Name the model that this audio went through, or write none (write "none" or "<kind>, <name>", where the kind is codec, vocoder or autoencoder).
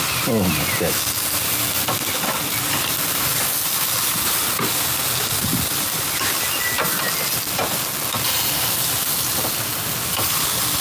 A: none